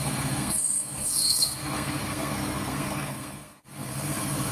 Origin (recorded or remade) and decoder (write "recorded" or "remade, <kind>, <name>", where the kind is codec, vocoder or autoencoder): remade, codec, SNAC